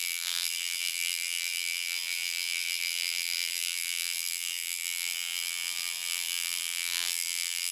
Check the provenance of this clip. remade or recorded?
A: remade